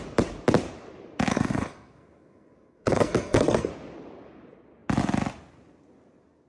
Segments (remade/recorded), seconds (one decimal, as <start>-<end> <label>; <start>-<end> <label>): 0.0-1.3 recorded; 1.3-3.7 remade; 3.7-6.5 recorded